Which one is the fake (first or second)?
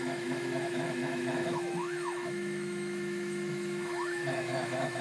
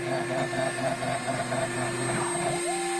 first